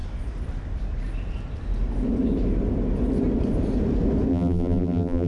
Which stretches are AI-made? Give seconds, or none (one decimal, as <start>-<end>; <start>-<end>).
4.3-5.3